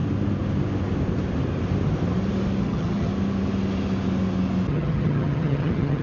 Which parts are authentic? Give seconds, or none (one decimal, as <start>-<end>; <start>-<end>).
0.0-2.6; 3.1-4.7